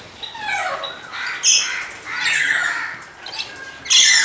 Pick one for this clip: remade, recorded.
recorded